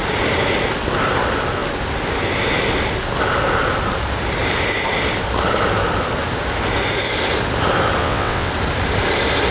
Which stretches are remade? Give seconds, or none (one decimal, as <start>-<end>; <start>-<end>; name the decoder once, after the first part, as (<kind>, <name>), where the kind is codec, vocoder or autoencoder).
8.0-8.5 (vocoder, WaveNeXt)